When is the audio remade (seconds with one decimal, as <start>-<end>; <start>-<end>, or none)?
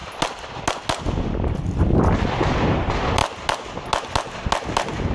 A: none